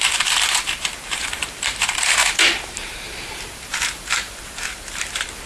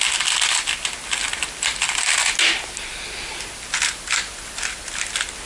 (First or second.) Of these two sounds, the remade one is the first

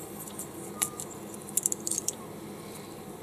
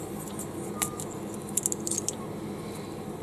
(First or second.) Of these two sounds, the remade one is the first